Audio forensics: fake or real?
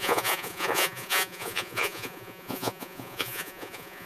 fake